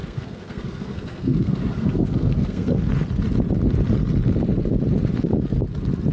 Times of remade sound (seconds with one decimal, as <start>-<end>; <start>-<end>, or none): 0.0-2.8